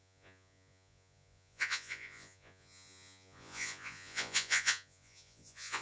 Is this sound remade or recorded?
remade